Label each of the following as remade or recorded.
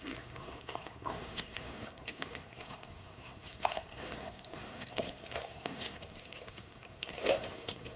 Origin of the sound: remade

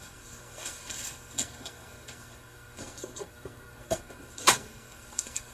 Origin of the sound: remade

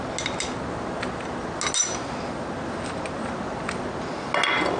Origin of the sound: recorded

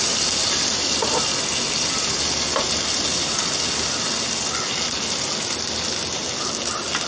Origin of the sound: recorded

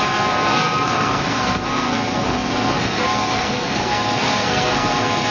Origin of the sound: remade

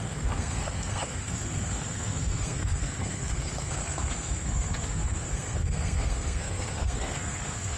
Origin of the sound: remade